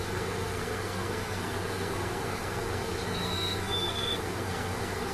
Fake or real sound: fake